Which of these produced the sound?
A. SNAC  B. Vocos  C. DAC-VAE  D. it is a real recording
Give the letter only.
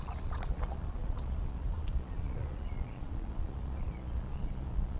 B